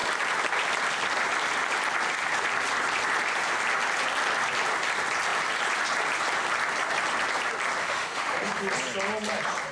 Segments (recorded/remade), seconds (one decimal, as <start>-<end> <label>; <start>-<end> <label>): 0.0-7.8 recorded; 7.8-8.5 remade; 8.5-9.7 recorded